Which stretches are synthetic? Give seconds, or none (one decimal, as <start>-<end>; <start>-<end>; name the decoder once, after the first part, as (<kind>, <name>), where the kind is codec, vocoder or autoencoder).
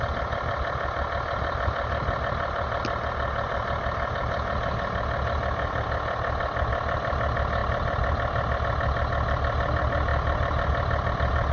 none